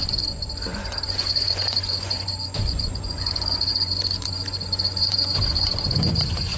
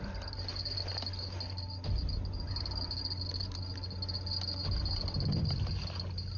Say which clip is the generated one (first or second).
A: first